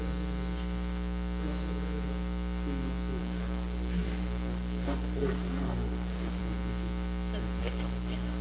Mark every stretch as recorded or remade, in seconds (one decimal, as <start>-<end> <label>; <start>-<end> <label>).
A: 0.0-3.2 recorded; 3.2-6.4 remade; 6.4-7.6 recorded; 7.6-8.4 remade